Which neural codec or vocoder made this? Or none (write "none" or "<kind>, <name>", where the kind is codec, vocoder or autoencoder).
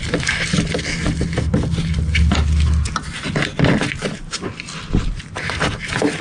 none